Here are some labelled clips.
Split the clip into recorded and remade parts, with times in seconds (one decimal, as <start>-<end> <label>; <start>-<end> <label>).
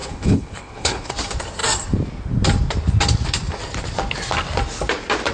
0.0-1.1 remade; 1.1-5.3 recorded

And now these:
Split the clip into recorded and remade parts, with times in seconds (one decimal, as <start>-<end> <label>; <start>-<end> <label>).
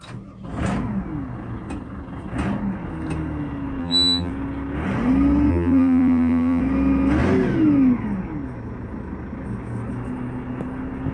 0.0-3.8 recorded; 3.8-4.3 remade; 4.3-5.5 recorded; 5.5-6.6 remade; 6.6-11.1 recorded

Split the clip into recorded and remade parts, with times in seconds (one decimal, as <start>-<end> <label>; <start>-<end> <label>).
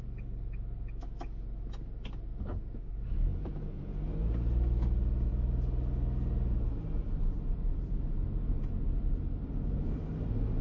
0.0-2.3 recorded; 2.3-2.9 remade; 2.9-3.3 recorded; 3.3-3.8 remade; 3.8-10.6 recorded